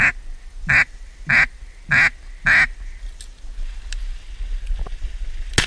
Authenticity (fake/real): real